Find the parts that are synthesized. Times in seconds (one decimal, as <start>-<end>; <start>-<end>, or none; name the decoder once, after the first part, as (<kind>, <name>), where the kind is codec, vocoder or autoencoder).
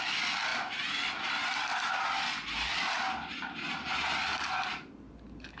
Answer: none